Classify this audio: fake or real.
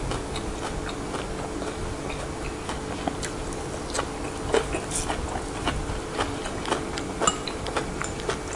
real